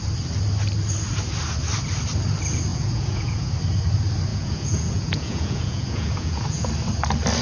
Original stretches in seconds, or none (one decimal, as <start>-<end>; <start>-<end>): 0.0-2.7; 3.5-4.3; 6.7-7.4

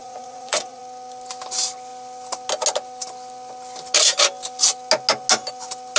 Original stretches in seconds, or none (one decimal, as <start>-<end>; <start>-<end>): 0.8-6.0

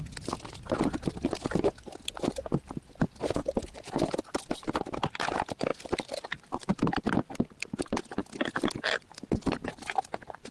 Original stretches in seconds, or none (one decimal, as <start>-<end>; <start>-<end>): 0.0-10.5

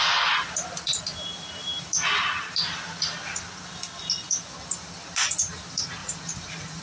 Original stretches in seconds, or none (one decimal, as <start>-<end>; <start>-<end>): 0.0-6.0